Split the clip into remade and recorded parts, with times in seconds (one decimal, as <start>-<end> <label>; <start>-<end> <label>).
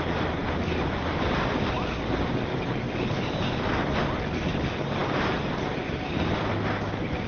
0.0-7.3 recorded